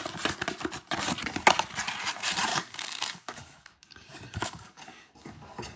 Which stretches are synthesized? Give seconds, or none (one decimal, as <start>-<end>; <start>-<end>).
2.5-5.8